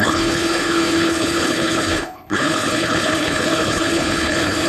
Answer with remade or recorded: remade